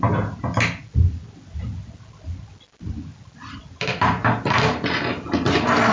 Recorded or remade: recorded